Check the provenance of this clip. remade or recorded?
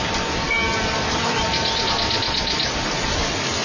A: recorded